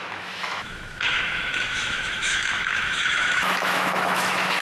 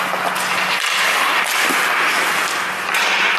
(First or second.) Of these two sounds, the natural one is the second